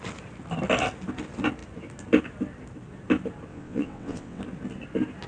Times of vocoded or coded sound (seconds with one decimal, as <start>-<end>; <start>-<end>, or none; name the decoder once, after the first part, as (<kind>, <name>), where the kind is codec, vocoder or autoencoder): 3.5-4.4 (vocoder, WaveNeXt)